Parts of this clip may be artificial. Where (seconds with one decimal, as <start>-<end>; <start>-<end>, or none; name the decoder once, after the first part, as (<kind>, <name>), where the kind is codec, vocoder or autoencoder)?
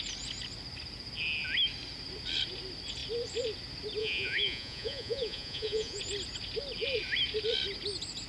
4.0-6.0 (vocoder, Vocos)